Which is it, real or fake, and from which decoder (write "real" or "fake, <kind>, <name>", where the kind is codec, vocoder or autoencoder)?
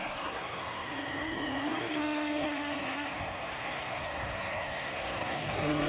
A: fake, codec, SNAC